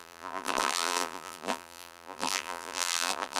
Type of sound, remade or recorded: remade